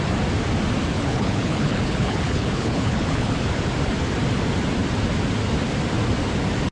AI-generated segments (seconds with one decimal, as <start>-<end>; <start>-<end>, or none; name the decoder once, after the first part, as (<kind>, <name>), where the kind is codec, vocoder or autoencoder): 0.9-3.3 (codec, HILCodec)